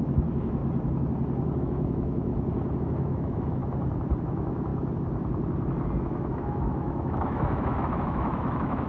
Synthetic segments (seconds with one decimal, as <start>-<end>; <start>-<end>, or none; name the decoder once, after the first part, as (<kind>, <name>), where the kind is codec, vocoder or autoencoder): 0.0-0.6 (autoencoder, DAC-VAE); 1.6-2.3; 2.8-3.6; 4.2-4.7; 6.0-8.9